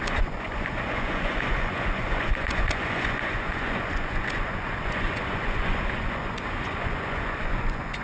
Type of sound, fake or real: fake